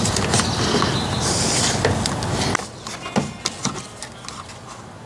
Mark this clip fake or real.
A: real